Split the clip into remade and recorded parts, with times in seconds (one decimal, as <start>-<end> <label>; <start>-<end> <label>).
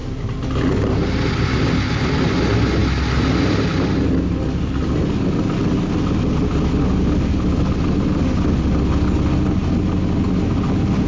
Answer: 0.0-11.1 recorded